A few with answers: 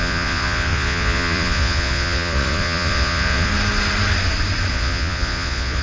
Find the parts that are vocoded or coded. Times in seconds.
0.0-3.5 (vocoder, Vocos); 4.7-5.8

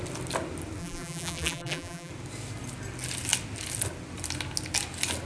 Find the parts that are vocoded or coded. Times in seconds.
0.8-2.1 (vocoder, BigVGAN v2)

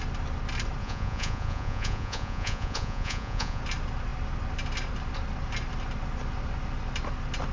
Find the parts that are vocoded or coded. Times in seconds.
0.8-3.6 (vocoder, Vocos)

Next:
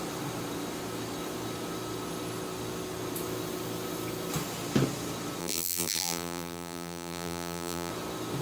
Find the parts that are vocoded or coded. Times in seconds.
5.4-7.9 (vocoder, BigVGAN v2)